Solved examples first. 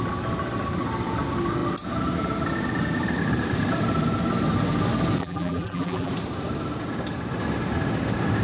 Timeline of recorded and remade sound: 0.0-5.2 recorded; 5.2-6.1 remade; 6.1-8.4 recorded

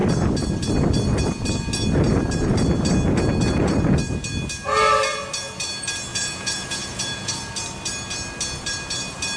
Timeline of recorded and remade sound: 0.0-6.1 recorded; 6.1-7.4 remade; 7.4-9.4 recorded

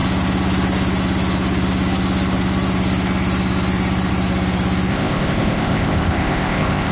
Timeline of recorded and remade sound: 0.0-4.9 recorded; 4.9-6.9 remade

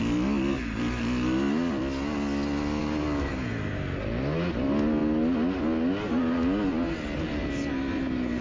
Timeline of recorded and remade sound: 0.0-8.4 recorded